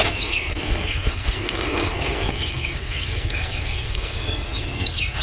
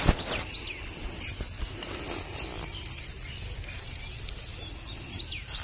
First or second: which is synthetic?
first